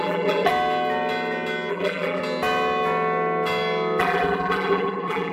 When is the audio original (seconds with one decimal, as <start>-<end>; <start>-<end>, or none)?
0.5-1.7; 2.2-4.0